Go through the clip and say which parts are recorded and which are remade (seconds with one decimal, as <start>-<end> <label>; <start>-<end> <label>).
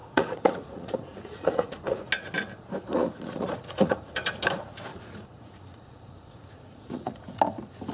0.0-2.1 remade; 2.1-2.9 recorded; 2.9-4.3 remade; 4.3-4.9 recorded; 4.9-7.4 remade; 7.4-7.9 recorded